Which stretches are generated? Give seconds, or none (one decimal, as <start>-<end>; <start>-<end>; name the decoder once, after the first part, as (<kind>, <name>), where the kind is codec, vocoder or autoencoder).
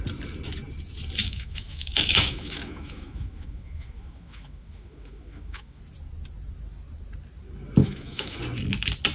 1.2-5.8 (autoencoder, DAC-VAE); 7.8-8.4